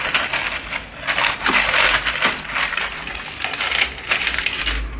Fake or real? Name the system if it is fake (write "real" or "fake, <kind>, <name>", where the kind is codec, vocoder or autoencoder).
real